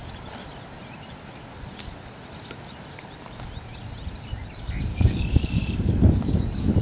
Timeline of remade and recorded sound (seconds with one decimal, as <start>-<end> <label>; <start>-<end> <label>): 0.0-4.9 recorded; 4.9-6.8 remade